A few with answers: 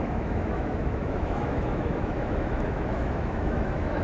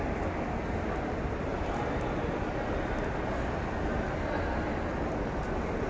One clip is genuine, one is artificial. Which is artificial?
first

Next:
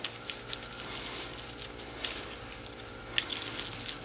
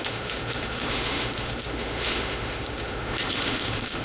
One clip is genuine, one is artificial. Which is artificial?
second